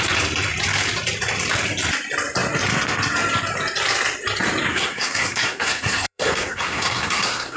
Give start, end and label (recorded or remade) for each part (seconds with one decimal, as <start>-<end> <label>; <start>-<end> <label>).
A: 0.0-4.7 recorded; 4.7-7.6 remade